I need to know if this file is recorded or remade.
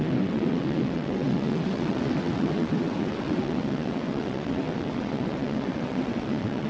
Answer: remade